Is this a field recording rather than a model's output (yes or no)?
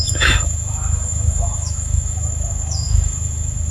no